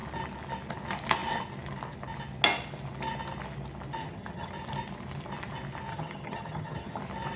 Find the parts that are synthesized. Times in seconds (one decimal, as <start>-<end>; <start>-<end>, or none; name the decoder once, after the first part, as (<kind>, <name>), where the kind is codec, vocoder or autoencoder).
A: 4.0-4.5 (vocoder, HiFi-GAN); 5.9-7.0